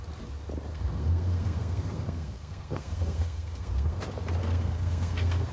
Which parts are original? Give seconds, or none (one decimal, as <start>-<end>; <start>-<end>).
0.0-0.7; 4.0-4.4